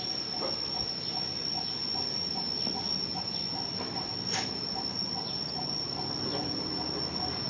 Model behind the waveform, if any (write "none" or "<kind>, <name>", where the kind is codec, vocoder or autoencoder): none